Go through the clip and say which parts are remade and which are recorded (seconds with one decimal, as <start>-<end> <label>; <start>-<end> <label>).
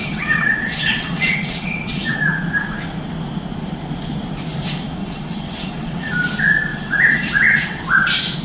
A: 0.0-2.2 remade; 2.2-5.0 recorded; 5.0-6.1 remade; 6.1-6.7 recorded; 6.7-7.8 remade; 7.8-8.4 recorded